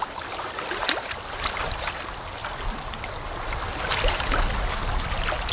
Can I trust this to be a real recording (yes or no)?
yes